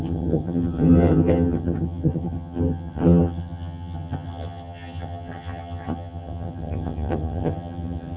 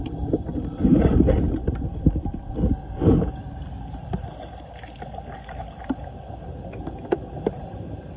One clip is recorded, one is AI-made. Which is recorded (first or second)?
second